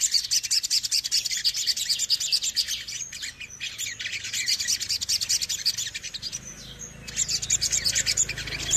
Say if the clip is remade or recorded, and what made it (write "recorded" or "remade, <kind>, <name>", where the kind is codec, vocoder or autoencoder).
recorded